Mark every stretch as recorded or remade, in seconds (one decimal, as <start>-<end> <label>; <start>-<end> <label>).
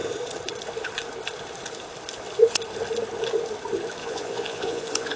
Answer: 0.0-4.0 recorded; 4.0-5.2 remade